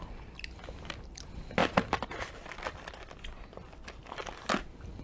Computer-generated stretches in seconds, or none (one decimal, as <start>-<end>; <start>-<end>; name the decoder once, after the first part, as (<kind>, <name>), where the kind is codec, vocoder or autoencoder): none